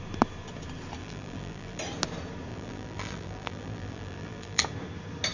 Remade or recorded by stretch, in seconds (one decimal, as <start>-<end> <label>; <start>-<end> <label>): 0.0-1.0 recorded; 1.0-1.8 remade; 1.8-2.5 recorded; 2.5-4.6 remade; 4.6-5.3 recorded